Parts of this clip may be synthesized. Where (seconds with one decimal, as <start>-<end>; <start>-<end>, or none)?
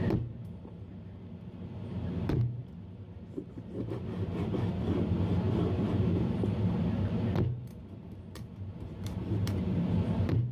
0.0-0.9; 1.6-2.6; 7.8-10.5